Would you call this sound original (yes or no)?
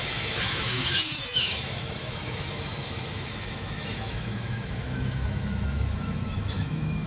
no